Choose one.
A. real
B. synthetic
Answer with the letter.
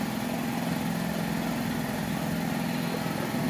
A